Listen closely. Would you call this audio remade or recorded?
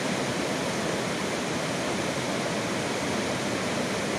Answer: recorded